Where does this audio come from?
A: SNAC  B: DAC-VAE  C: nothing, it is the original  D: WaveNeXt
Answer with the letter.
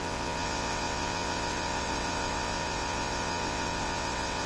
D